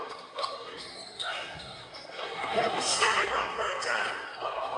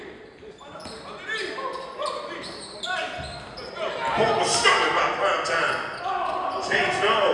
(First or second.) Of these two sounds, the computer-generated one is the first